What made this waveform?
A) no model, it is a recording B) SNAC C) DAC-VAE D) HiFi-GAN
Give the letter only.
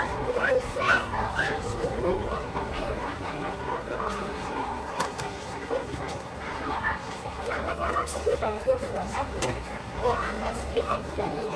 B